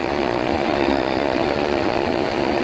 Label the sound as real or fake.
fake